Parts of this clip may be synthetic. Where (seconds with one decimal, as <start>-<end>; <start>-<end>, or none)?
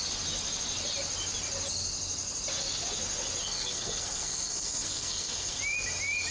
3.4-5.6